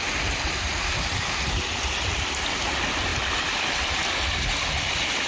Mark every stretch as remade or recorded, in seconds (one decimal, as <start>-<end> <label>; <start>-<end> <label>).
0.0-5.3 recorded